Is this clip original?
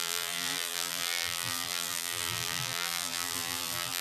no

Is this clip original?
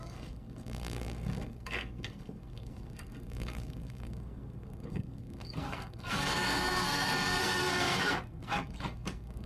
no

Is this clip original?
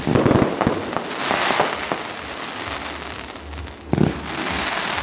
yes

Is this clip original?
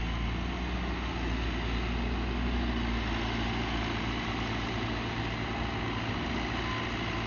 yes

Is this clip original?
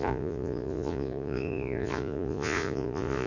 no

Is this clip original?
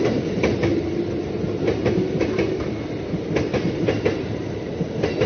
yes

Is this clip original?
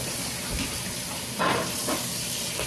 yes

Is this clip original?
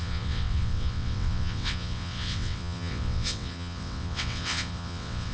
no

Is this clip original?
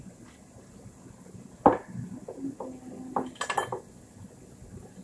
yes